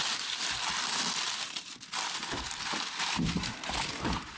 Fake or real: real